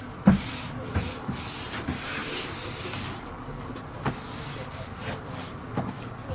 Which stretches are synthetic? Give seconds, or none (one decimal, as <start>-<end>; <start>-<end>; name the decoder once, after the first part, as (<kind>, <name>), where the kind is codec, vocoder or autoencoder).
none